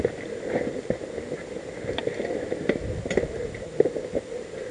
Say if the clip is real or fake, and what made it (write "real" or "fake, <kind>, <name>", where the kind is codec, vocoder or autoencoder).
real